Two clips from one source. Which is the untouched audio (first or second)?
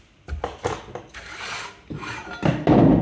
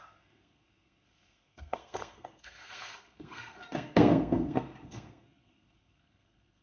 first